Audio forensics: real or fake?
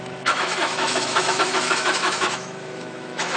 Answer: fake